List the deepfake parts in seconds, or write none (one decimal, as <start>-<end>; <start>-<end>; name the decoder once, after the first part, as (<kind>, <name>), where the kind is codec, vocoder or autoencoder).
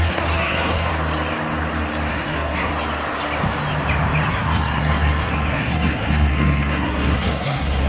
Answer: 0.0-0.9 (codec, SNAC); 2.1-2.7; 4.3-7.9